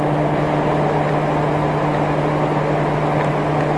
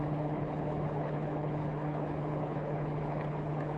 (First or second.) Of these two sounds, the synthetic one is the second